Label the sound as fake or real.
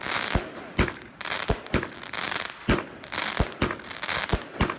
real